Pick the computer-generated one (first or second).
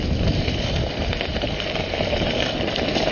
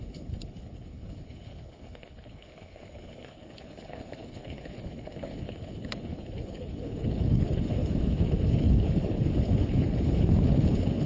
second